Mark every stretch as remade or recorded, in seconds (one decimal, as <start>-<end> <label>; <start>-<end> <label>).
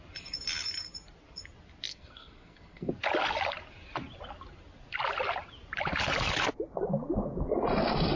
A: 0.0-1.9 recorded; 1.9-2.9 remade; 2.9-8.2 recorded